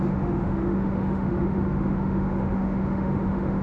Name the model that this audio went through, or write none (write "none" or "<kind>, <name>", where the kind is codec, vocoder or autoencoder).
autoencoder, DAC-VAE